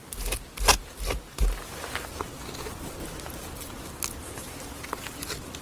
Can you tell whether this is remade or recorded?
recorded